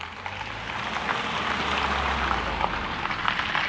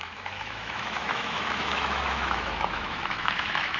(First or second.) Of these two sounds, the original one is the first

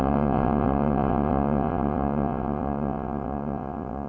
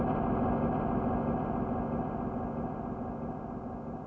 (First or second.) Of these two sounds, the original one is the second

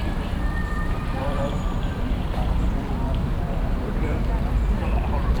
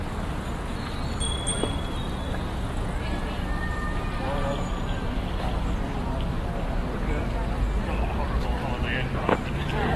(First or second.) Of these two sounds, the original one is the second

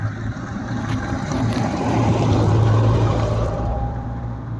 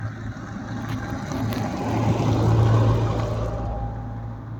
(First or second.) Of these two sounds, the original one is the second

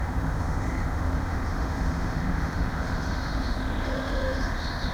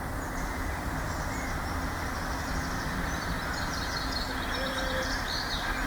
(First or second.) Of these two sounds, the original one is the second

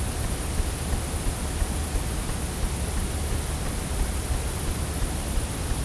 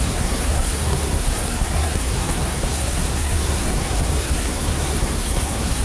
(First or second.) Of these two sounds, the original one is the first